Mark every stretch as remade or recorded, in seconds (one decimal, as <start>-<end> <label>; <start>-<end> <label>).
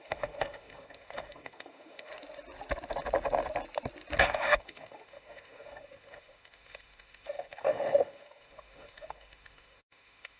0.0-2.1 remade; 2.1-4.2 recorded; 4.2-10.4 remade